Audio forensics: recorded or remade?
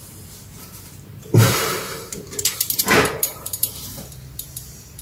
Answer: remade